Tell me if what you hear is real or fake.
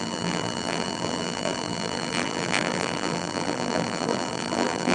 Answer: fake